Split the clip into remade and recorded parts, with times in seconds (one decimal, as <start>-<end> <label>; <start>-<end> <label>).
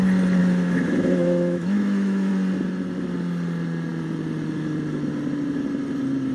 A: 0.0-0.4 recorded; 0.4-2.3 remade; 2.3-6.3 recorded